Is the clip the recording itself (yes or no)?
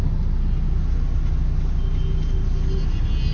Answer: yes